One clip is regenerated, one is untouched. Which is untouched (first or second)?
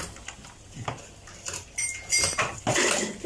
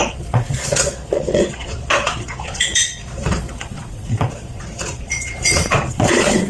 first